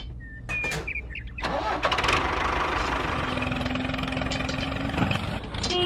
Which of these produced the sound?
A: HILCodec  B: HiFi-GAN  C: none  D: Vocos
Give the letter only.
C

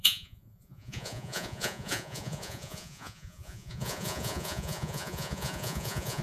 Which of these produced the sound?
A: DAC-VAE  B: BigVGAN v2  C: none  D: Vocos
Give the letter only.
D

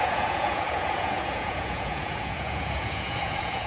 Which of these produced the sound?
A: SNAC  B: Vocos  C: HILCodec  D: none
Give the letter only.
B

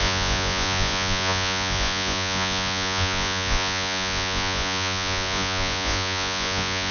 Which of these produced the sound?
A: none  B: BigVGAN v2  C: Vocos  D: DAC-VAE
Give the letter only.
C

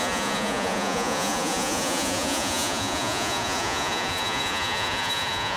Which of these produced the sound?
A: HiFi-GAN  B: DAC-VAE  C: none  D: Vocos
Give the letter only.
D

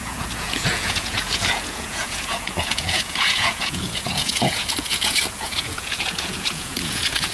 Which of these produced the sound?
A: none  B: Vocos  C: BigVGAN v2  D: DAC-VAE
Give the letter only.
B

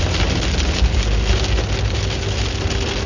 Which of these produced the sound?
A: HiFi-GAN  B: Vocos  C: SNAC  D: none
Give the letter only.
D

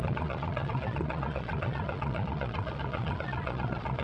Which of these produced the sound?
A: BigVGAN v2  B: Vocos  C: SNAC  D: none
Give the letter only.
B